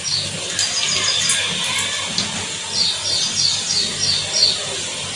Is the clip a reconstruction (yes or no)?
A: no